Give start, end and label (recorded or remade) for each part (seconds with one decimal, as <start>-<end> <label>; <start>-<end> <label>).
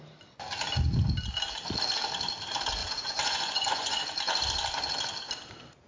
0.0-2.8 recorded; 2.8-4.0 remade; 4.0-5.9 recorded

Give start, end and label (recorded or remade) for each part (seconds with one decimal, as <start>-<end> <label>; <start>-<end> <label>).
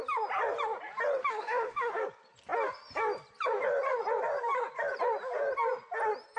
0.0-1.2 recorded; 1.2-2.0 remade; 2.0-6.4 recorded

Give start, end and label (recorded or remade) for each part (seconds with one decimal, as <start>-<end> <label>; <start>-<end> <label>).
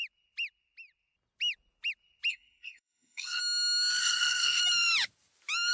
0.0-2.3 recorded; 2.3-3.4 remade; 3.4-4.0 recorded; 4.0-4.6 remade; 4.6-5.7 recorded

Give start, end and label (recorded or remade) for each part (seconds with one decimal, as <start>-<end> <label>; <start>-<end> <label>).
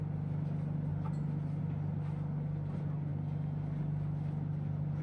0.0-5.0 recorded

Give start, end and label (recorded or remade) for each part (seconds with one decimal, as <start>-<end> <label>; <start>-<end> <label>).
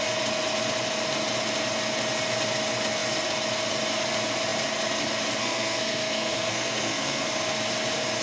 0.0-5.4 recorded; 5.4-7.2 remade; 7.2-8.2 recorded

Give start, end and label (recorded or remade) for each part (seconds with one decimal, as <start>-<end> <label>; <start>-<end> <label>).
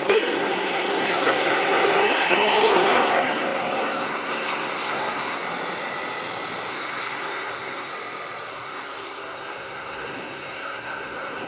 0.0-5.4 remade; 5.4-6.7 recorded; 6.7-7.9 remade; 7.9-8.5 recorded; 8.5-11.5 remade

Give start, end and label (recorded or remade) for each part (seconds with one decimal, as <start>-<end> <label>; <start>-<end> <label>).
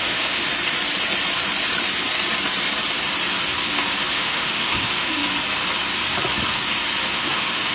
0.0-0.4 remade; 0.4-4.1 recorded; 4.1-5.2 remade; 5.2-7.1 recorded; 7.1-7.7 remade